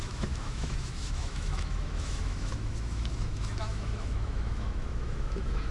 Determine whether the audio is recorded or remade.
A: remade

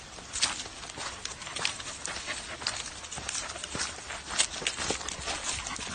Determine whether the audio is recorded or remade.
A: recorded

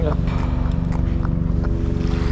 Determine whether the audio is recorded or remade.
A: recorded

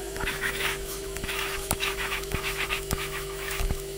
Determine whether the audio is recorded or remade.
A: remade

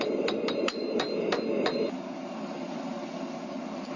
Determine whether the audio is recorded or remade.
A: recorded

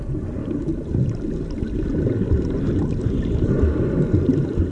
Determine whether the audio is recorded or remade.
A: recorded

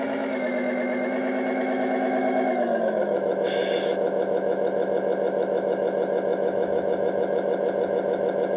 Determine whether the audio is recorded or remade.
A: remade